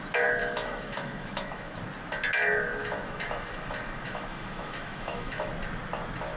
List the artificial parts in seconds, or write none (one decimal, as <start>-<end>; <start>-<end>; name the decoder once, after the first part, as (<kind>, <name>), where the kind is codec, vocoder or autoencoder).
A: 0.4-1.8 (autoencoder, DAC-VAE); 2.8-5.5